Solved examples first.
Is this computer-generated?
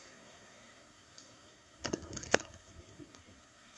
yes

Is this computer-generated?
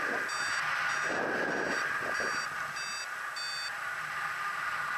no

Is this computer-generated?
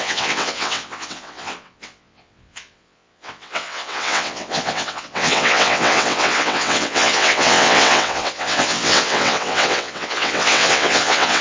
yes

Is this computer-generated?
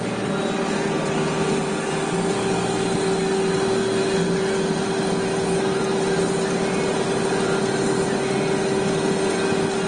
no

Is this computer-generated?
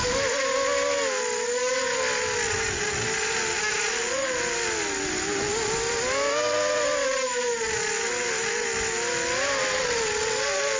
no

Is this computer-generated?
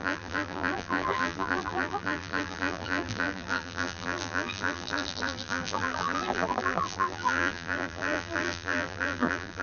yes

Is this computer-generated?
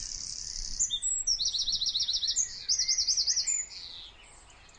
no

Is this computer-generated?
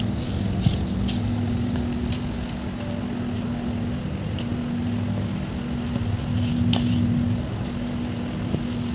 no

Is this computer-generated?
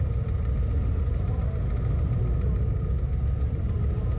no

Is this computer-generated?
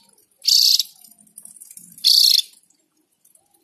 yes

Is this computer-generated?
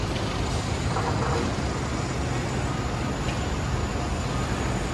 no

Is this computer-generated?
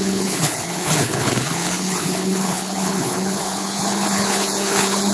yes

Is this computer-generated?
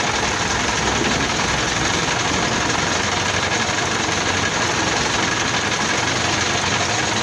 no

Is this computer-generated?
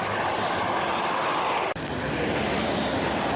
no